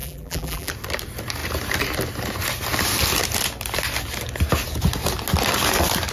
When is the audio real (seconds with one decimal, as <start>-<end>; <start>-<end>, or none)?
0.7-6.1